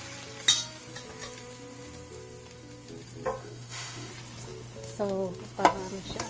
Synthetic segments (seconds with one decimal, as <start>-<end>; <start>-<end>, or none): 3.4-4.1